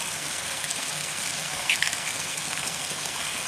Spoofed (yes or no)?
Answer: yes